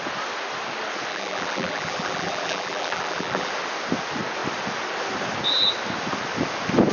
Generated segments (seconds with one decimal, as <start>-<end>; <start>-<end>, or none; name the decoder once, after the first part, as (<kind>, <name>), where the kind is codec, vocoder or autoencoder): 1.1-3.5 (vocoder, BigVGAN v2)